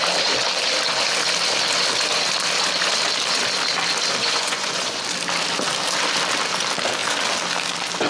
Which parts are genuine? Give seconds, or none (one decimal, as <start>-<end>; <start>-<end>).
0.0-4.2; 5.0-8.1